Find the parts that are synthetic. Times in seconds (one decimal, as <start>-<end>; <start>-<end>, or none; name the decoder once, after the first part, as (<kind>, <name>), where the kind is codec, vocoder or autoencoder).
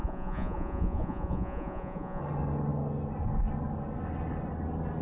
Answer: 0.0-2.2 (vocoder, Vocos)